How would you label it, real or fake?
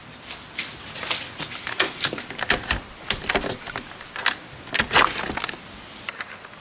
real